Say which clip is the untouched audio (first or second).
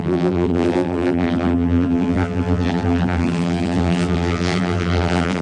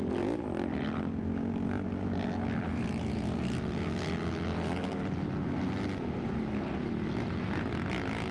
second